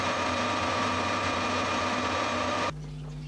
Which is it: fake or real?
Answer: real